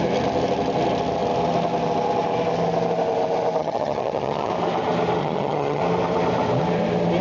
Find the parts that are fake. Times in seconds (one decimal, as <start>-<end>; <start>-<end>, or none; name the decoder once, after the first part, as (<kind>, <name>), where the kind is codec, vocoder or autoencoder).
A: 3.6-4.5 (vocoder, HiFi-GAN); 5.2-5.8

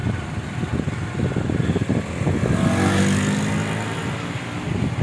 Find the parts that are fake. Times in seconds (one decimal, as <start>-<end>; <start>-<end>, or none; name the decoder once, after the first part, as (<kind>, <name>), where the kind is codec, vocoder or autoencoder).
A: none

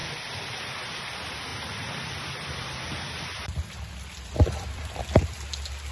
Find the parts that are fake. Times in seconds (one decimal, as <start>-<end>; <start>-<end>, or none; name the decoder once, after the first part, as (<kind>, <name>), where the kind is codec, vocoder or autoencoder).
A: 1.5-5.0 (vocoder, BigVGAN v2)

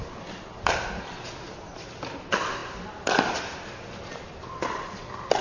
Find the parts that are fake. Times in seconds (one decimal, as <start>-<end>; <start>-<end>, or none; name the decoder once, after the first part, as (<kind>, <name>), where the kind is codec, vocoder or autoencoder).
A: 0.0-0.7 (vocoder, BigVGAN v2)

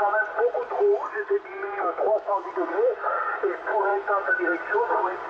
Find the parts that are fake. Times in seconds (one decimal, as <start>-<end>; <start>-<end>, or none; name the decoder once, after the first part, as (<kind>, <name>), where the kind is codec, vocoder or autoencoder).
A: 1.6-2.5 (autoencoder, DAC-VAE)

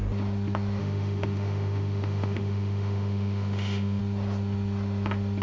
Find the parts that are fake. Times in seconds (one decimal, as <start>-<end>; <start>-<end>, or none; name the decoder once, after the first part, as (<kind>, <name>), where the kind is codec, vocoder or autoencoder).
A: 0.8-4.0 (autoencoder, DAC-VAE)